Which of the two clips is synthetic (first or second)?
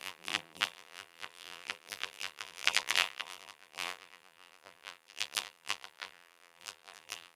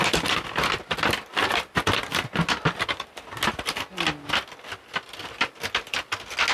first